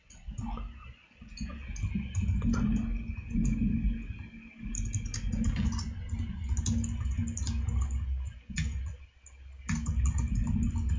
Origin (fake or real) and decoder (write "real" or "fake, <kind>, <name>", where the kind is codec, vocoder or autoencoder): real